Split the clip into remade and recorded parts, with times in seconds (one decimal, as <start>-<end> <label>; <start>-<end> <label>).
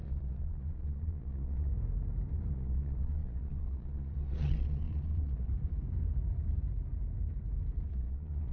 0.0-1.7 remade; 1.7-2.5 recorded; 2.5-5.5 remade; 5.5-7.9 recorded; 7.9-8.5 remade